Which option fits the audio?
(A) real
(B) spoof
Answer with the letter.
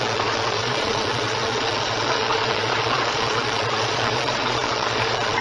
B